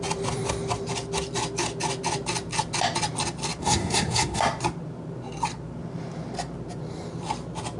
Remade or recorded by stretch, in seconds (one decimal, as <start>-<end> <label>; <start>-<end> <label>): 0.0-3.6 recorded; 3.6-4.4 remade; 4.4-7.8 recorded